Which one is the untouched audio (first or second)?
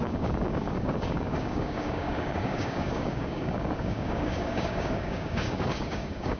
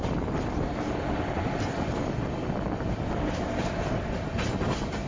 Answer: second